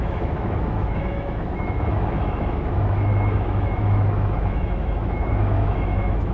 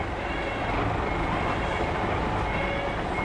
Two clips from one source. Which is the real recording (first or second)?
second